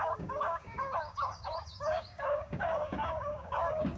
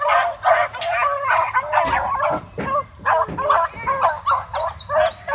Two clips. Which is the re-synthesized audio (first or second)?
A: first